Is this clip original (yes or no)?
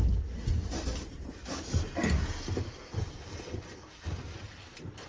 yes